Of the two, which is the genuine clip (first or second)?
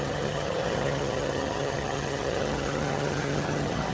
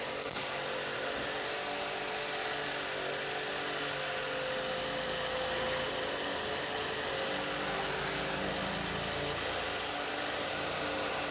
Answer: second